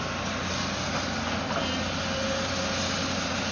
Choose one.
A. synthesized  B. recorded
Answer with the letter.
B